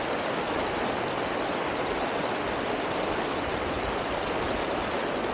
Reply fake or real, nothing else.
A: real